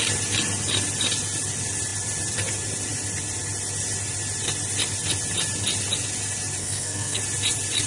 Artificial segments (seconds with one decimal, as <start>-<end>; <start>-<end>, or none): 6.6-7.2